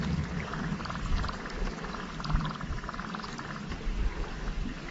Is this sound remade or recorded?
recorded